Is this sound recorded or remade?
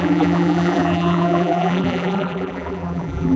remade